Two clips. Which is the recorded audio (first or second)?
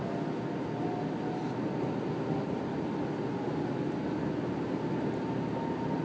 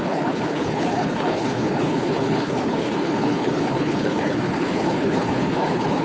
first